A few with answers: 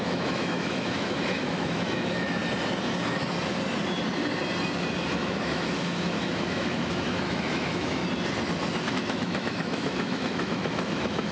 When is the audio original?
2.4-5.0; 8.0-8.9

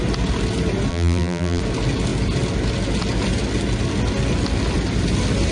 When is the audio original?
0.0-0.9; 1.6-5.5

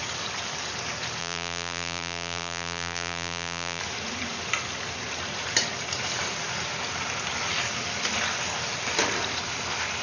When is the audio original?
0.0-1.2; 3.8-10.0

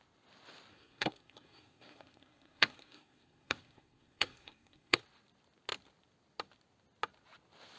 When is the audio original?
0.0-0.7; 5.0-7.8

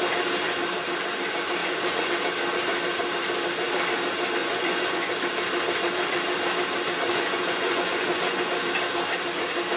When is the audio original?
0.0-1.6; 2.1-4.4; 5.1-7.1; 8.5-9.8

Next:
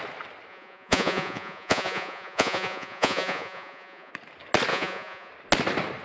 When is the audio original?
0.0-0.5; 4.1-4.7; 5.3-6.0

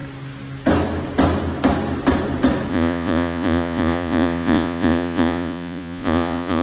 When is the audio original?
0.0-2.7